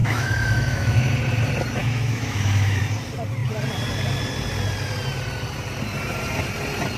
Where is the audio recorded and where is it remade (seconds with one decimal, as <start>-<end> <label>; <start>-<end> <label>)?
0.0-1.0 remade; 1.0-1.8 recorded; 1.8-2.8 remade; 2.8-7.0 recorded